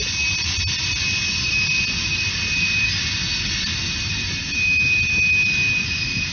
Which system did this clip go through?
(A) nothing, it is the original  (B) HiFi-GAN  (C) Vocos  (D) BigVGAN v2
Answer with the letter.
A